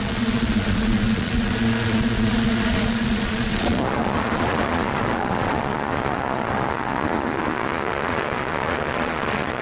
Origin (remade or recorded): remade